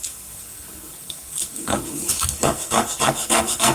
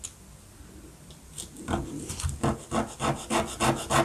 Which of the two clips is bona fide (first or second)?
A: second